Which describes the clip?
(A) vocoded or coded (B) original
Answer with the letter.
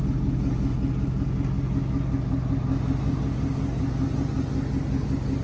B